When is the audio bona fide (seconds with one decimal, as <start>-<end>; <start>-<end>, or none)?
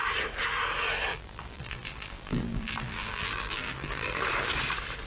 0.0-1.1; 4.2-5.1